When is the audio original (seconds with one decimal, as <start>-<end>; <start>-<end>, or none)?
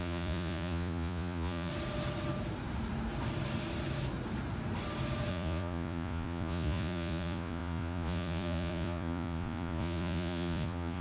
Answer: 1.7-5.3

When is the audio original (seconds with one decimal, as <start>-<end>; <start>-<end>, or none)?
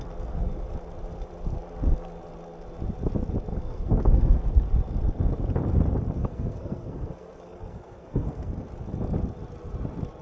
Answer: 0.0-3.5; 4.6-6.2; 8.5-10.2